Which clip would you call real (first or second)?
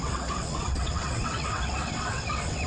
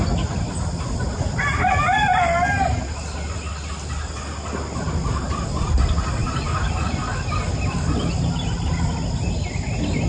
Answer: second